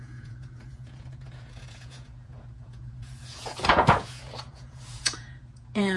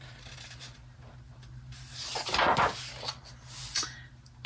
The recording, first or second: second